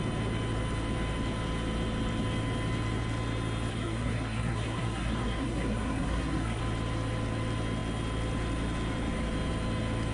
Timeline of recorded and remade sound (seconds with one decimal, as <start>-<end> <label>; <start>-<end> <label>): 0.0-3.7 recorded; 3.7-6.6 remade; 6.6-10.1 recorded